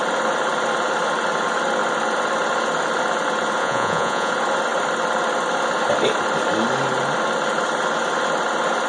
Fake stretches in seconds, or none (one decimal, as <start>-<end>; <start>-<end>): 3.6-4.3